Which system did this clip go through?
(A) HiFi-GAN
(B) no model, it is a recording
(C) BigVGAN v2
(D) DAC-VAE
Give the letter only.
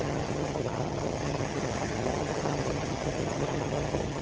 A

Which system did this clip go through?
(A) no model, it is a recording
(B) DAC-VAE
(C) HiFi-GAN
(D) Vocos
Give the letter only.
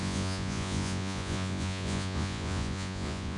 D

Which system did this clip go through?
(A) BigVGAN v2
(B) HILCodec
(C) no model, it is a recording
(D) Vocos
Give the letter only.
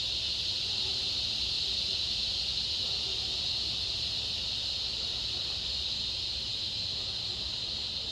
C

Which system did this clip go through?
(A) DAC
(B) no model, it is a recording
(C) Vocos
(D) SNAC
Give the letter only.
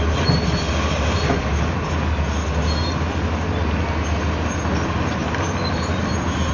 B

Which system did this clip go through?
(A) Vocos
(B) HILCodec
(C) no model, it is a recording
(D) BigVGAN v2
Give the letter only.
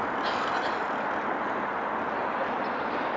C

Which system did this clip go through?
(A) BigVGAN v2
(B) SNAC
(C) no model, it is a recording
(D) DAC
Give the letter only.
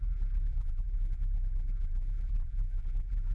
A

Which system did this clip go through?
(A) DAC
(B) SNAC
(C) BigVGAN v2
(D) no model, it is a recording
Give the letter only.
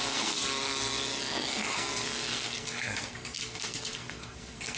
B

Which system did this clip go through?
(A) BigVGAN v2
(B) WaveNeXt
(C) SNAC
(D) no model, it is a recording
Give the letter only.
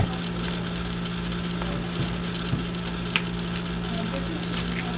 D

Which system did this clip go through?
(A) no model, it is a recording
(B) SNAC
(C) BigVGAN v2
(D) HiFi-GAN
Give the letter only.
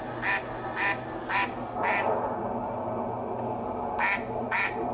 A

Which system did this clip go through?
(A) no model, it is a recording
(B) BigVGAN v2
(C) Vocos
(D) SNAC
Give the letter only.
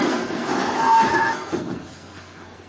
D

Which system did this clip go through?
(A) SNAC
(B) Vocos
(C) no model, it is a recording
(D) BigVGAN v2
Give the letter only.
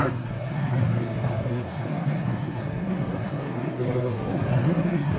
A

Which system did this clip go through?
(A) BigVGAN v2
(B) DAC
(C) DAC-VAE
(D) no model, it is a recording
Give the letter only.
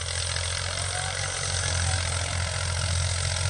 D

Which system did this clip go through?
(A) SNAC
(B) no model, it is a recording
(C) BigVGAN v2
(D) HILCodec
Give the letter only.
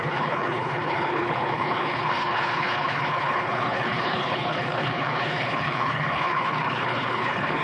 D